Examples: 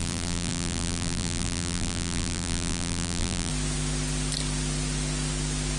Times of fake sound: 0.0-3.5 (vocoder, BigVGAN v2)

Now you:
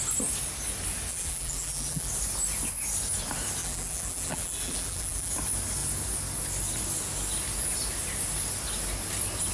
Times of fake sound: 1.1-2.1 (vocoder, BigVGAN v2); 3.6-5.3

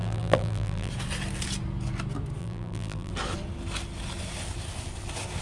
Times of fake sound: 0.0-0.9 (vocoder, BigVGAN v2); 2.4-3.1